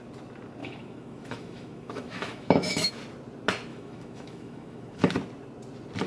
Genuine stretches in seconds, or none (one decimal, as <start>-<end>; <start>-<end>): 0.0-0.6; 2.9-3.7; 5.1-6.1